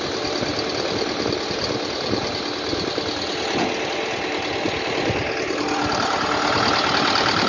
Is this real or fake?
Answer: real